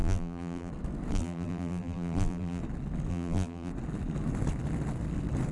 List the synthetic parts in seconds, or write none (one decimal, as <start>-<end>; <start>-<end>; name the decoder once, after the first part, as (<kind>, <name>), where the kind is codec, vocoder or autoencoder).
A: 0.0-0.7 (vocoder, BigVGAN v2); 1.1-2.6; 3.1-3.7